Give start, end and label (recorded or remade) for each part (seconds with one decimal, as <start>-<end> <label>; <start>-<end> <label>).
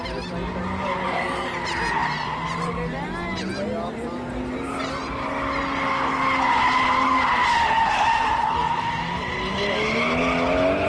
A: 0.0-10.9 recorded